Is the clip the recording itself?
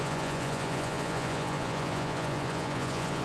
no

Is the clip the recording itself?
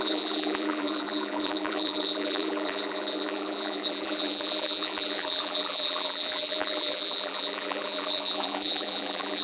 no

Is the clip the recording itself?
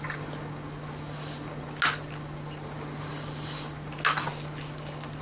yes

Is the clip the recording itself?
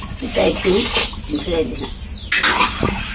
yes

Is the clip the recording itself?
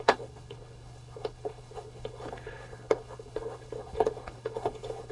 no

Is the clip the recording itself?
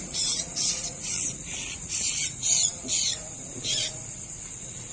no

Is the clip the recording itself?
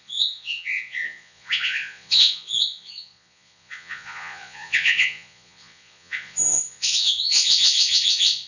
no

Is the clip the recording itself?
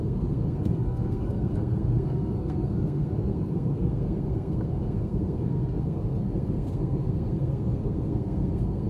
no